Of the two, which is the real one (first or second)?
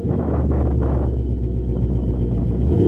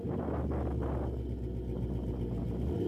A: second